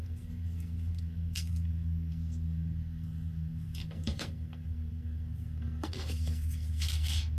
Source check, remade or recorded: remade